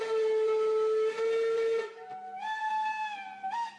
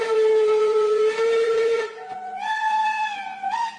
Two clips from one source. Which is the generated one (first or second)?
second